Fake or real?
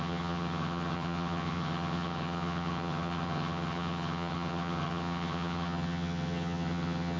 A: fake